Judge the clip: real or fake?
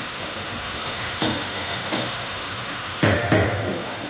fake